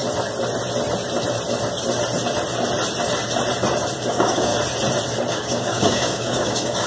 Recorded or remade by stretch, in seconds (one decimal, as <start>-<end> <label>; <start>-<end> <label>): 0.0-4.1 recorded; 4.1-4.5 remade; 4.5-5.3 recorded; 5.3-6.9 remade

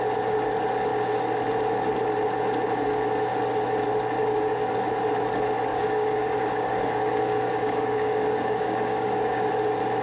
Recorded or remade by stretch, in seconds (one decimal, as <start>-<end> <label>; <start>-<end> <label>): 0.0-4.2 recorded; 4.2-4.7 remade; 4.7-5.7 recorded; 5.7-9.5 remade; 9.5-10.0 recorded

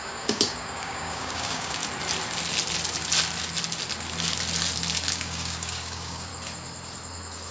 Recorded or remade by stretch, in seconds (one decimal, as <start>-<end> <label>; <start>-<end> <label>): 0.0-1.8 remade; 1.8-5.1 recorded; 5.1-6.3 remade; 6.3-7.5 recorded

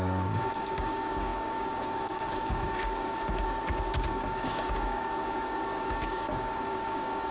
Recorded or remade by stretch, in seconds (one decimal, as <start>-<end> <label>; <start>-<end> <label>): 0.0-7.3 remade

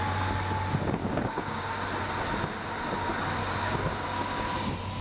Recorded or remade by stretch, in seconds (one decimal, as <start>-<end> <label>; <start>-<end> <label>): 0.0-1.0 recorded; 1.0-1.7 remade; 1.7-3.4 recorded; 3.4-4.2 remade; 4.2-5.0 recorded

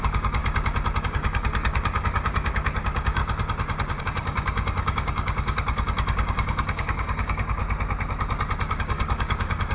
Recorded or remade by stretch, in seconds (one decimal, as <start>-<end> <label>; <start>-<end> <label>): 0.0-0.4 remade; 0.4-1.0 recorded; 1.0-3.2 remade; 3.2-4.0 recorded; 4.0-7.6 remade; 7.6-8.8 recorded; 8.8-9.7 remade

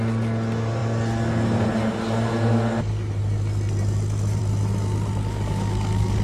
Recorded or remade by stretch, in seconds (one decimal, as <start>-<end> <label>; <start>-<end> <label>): 0.0-5.2 recorded; 5.2-6.2 remade

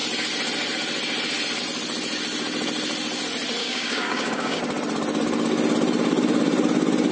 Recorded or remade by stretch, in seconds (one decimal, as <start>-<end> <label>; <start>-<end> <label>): 0.0-3.6 recorded; 3.6-4.6 remade; 4.6-7.1 recorded